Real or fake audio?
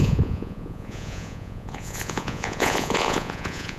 fake